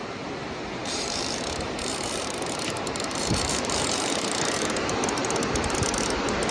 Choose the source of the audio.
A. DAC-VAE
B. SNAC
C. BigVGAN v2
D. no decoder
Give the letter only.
C